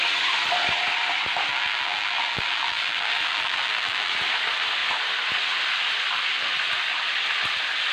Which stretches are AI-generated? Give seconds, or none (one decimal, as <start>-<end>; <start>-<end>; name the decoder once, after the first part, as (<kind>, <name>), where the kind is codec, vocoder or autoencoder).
1.5-4.1 (vocoder, BigVGAN v2)

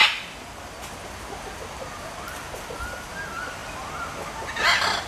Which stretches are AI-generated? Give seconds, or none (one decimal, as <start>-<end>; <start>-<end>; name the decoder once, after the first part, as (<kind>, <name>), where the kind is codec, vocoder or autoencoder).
none

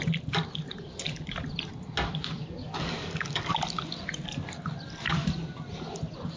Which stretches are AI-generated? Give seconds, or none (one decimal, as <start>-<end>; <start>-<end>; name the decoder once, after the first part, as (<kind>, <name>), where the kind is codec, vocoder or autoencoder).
2.6-3.5 (codec, DAC)

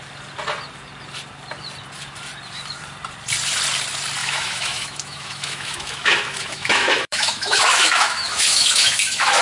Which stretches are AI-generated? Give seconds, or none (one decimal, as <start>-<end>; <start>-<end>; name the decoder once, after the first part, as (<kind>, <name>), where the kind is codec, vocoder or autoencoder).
4.2-9.4 (autoencoder, DAC-VAE)

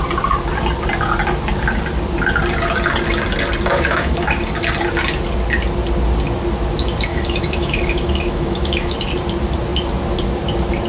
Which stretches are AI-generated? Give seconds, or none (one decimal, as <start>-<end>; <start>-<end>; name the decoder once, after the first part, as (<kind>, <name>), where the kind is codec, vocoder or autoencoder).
3.7-4.2 (autoencoder, DAC-VAE); 7.1-8.9

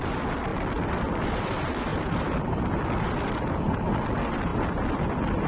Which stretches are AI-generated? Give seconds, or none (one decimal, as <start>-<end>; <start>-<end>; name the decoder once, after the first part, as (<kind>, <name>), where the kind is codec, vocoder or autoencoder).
0.5-1.3 (vocoder, BigVGAN v2); 1.9-2.6

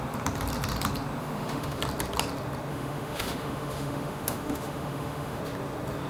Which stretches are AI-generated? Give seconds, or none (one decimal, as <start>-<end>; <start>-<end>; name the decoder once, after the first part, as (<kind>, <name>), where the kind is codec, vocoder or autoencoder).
1.2-1.8 (autoencoder, DAC-VAE); 2.7-5.4